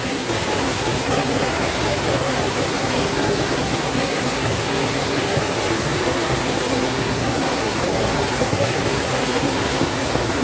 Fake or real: fake